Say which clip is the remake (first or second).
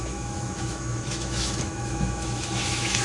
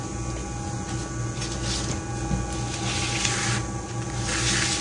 first